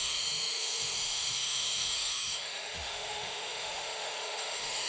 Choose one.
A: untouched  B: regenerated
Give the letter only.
B